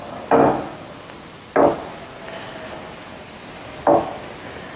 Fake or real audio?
real